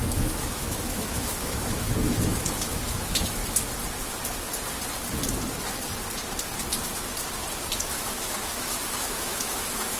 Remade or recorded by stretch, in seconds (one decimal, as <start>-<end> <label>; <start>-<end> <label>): 0.0-3.4 remade; 3.4-8.0 recorded; 8.0-10.0 remade